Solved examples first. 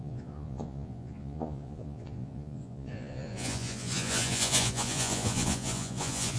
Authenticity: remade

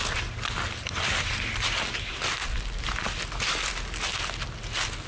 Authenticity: recorded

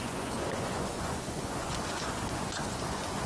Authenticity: remade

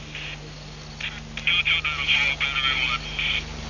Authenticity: recorded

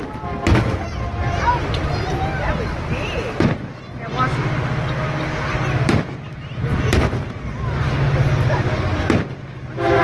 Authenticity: recorded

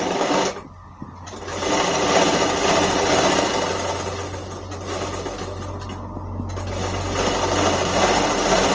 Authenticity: recorded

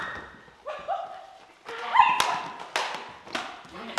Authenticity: recorded